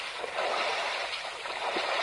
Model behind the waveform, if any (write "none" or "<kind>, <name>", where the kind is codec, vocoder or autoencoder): vocoder, BigVGAN v2